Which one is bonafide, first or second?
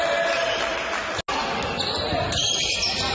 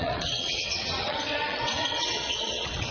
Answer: first